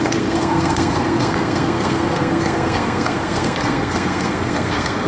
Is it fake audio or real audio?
fake